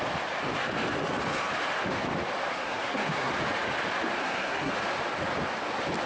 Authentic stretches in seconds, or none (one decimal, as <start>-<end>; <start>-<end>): 0.0-2.5; 3.3-4.2; 4.7-6.1